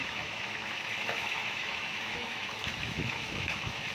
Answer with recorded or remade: remade